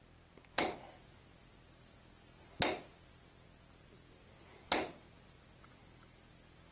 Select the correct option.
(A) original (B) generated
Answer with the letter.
A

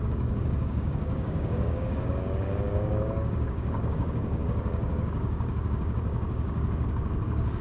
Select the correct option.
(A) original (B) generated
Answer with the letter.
B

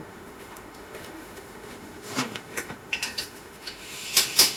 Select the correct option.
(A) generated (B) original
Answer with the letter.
A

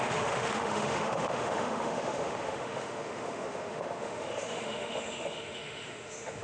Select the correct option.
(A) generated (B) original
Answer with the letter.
A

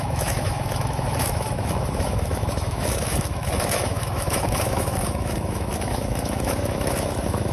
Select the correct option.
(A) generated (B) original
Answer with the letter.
A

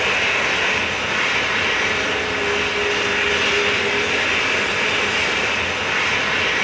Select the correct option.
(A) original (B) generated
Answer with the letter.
A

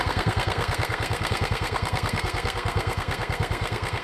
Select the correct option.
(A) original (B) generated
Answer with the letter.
B